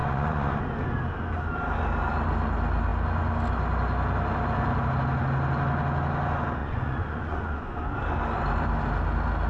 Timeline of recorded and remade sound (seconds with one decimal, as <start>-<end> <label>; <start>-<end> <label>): 0.0-0.6 remade; 0.6-6.6 recorded; 6.6-7.8 remade; 7.8-9.5 recorded